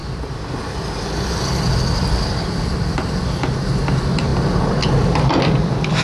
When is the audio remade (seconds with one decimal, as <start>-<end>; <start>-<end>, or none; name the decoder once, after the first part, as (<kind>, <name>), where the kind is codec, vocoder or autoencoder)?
none

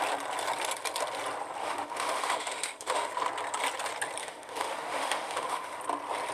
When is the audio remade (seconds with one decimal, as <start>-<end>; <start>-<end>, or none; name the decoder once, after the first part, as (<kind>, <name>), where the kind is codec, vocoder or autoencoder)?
1.6-3.1 (autoencoder, DAC-VAE); 4.2-5.8

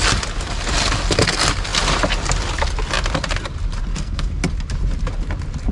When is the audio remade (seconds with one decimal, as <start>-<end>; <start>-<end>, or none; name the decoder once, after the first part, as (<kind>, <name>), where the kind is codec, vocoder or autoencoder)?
3.9-4.4 (codec, SNAC)

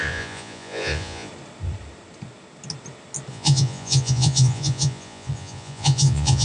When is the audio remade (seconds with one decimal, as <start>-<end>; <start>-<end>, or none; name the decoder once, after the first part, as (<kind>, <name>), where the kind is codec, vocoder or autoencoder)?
0.0-1.3 (vocoder, Vocos); 3.3-6.4